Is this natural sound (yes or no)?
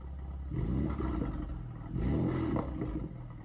yes